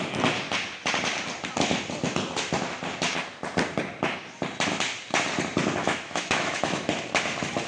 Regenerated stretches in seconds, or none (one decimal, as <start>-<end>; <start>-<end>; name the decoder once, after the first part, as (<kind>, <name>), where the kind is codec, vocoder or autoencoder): 5.8-6.9 (autoencoder, DAC-VAE)